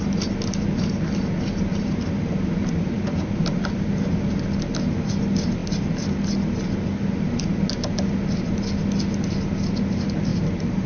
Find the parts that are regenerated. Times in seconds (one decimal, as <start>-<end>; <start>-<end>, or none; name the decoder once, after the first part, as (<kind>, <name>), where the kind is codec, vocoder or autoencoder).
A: 1.7-4.1 (vocoder, BigVGAN v2); 10.3-10.9